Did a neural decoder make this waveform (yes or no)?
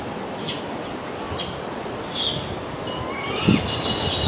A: no